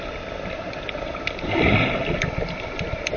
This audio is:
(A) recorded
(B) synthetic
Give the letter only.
A